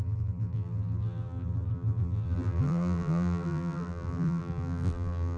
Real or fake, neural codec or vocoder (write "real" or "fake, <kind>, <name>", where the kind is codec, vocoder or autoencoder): fake, vocoder, BigVGAN v2